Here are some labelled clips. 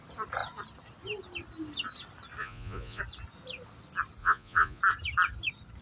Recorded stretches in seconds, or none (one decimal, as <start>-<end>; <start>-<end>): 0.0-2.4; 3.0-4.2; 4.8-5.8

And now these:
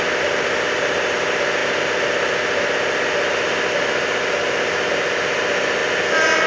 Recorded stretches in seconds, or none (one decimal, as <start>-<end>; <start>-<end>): 0.0-6.5

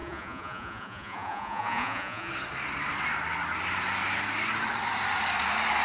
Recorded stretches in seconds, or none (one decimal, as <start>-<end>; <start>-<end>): 2.3-5.8

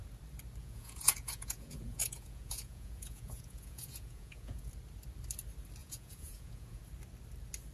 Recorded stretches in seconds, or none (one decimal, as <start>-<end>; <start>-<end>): 0.0-0.6; 4.7-5.8; 6.8-7.7

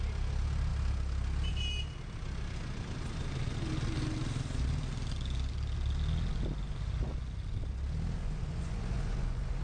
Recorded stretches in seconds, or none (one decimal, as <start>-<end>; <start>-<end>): 0.0-8.2

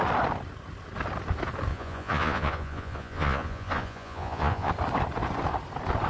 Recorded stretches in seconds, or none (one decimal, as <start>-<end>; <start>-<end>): 0.0-1.7; 4.7-6.1